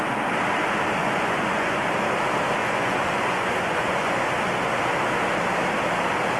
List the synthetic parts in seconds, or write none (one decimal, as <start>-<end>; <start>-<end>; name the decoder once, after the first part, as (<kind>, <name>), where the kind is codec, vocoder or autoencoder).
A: 1.0-1.9 (vocoder, Vocos); 2.6-4.3